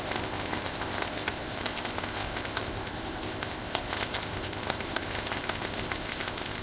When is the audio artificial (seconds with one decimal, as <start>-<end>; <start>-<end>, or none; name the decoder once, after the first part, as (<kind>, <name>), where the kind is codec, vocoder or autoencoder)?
0.0-6.6 (codec, ZipCodec)